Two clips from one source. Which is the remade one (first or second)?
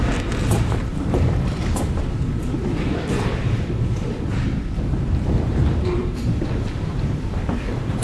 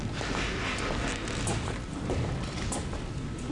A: first